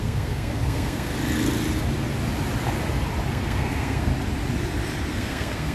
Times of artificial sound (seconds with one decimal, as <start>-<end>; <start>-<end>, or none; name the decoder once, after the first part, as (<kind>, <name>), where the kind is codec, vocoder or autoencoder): 0.0-1.1 (codec, SNAC); 3.3-4.1; 5.1-5.7